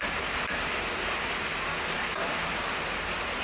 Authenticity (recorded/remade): recorded